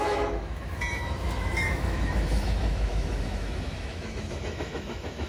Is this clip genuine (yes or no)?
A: no